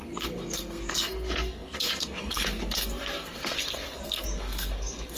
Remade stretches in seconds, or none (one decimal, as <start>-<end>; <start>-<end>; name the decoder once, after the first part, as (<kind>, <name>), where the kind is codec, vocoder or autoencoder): 0.0-5.2 (codec, SNAC)